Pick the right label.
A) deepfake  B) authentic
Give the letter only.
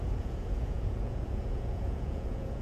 A